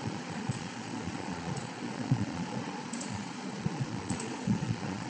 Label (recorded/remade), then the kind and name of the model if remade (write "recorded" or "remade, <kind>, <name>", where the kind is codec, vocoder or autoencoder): remade, vocoder, Vocos